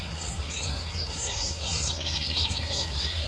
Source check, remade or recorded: remade